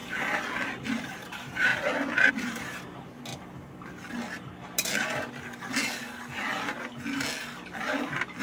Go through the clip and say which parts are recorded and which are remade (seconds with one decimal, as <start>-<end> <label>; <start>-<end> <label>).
0.0-1.0 recorded; 1.0-1.7 remade; 1.7-2.3 recorded; 2.3-3.3 remade; 3.3-8.4 recorded